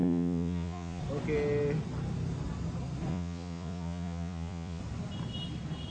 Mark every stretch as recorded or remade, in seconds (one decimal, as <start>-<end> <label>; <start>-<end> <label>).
0.0-1.0 remade; 1.0-3.1 recorded; 3.1-4.8 remade; 4.8-5.9 recorded